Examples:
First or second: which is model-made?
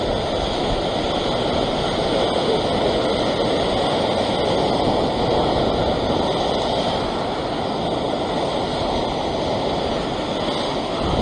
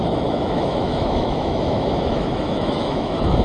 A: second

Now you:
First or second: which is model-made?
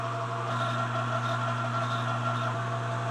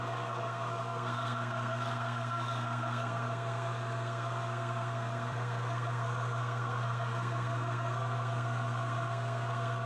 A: second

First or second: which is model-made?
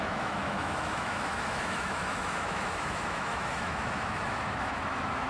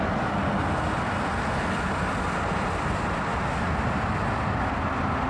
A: first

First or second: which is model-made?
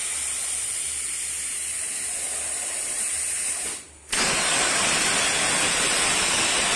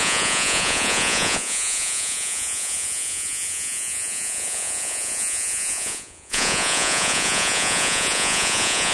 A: second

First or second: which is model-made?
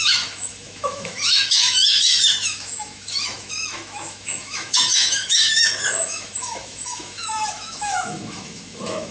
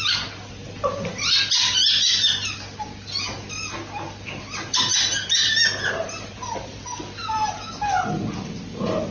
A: first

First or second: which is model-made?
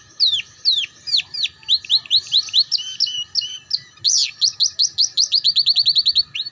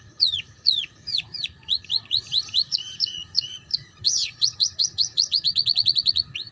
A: second